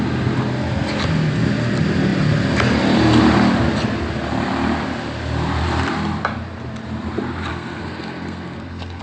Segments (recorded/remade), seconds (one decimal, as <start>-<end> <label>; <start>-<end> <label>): 0.0-7.5 recorded; 7.5-9.0 remade